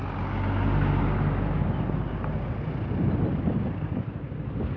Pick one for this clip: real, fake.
real